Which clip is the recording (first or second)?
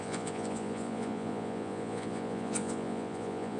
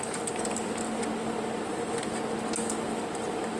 second